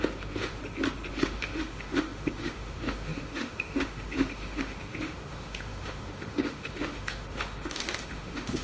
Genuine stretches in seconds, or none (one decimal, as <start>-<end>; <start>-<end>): 0.6-1.1